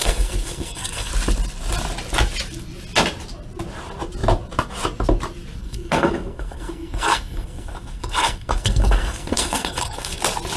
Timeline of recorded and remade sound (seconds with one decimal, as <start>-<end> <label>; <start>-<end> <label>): 0.0-1.1 remade; 1.1-5.6 recorded; 5.6-10.2 remade; 10.2-10.6 recorded